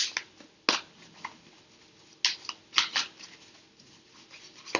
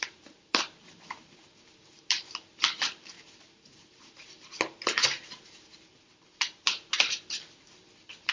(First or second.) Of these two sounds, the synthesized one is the second